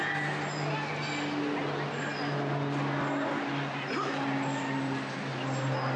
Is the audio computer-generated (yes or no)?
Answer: no